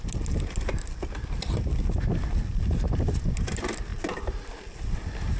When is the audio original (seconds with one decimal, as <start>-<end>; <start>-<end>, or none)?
0.0-2.5; 3.2-3.9; 4.5-5.4